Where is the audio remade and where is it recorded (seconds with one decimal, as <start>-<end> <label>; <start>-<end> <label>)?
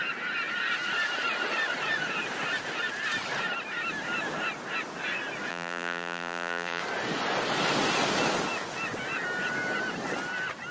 0.0-5.5 recorded; 5.5-6.8 remade; 6.8-10.7 recorded